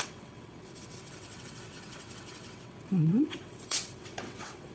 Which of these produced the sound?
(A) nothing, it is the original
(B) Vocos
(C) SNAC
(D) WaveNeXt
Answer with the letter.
D